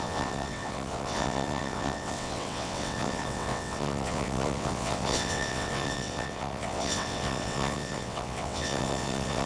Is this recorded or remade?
remade